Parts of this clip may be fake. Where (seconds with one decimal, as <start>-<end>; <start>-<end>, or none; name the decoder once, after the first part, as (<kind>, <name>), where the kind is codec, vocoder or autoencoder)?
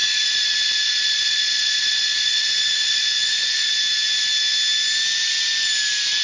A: 0.0-3.7 (vocoder, Vocos)